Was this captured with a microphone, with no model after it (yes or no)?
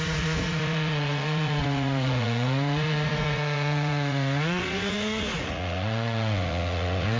no